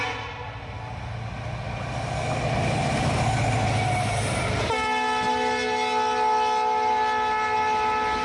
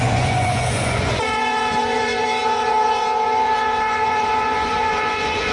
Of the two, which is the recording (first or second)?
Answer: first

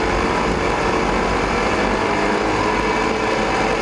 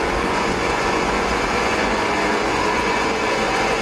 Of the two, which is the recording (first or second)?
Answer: first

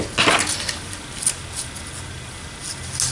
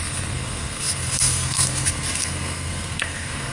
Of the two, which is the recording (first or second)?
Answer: first